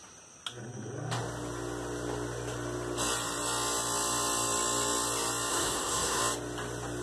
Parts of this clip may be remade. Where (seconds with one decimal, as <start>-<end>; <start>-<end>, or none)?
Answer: 5.5-6.2